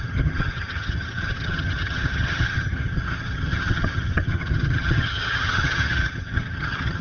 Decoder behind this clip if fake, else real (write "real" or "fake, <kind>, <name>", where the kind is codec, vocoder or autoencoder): fake, vocoder, HiFi-GAN